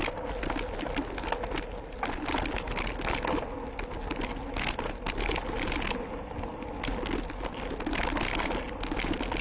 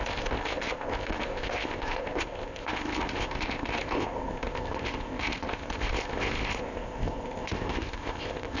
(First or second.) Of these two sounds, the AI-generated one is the second